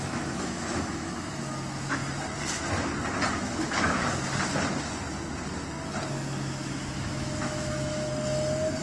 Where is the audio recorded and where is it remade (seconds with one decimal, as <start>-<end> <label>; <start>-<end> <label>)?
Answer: 0.0-2.0 remade; 2.0-3.3 recorded; 3.3-4.0 remade; 4.0-6.1 recorded; 6.1-8.1 remade; 8.1-8.8 recorded